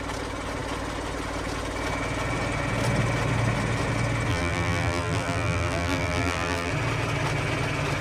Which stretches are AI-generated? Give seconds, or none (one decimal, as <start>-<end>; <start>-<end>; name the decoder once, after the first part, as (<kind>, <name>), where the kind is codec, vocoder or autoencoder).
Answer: 4.3-6.7 (vocoder, BigVGAN v2)